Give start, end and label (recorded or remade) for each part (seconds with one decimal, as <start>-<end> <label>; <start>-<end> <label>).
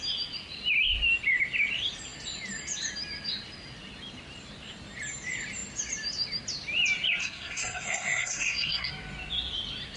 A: 0.0-7.2 recorded; 7.2-8.9 remade; 8.9-10.0 recorded